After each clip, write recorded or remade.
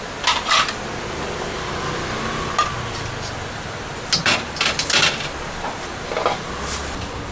recorded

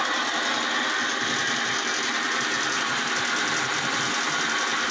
recorded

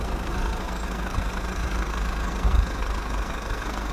remade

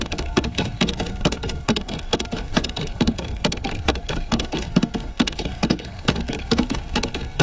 remade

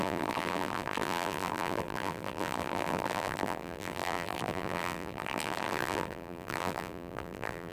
remade